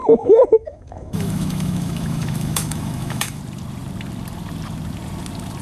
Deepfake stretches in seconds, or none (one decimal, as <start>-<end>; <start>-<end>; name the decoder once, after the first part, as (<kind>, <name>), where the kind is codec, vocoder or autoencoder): 0.0-3.4 (autoencoder, DAC-VAE)